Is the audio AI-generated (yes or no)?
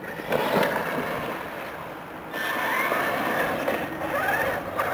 no